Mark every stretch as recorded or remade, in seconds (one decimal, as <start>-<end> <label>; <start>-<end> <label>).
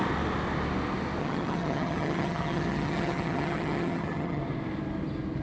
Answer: 0.0-1.2 recorded; 1.2-4.4 remade; 4.4-5.4 recorded